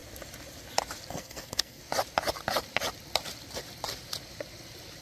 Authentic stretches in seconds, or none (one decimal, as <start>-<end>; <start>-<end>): 0.0-1.1; 1.8-5.0